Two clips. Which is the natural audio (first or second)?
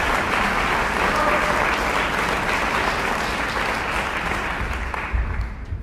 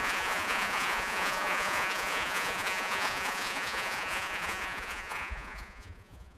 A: first